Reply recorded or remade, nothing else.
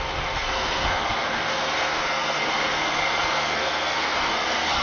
remade